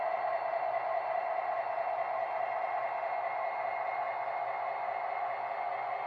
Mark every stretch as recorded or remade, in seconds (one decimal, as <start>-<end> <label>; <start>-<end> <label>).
0.0-6.1 recorded